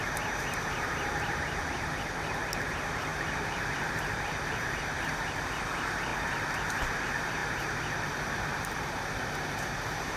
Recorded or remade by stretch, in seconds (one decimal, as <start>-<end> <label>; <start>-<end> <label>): 0.0-6.1 remade; 6.1-6.7 recorded; 6.7-10.2 remade